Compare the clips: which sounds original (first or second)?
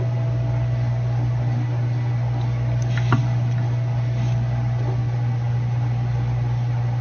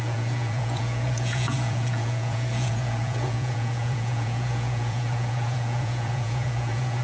first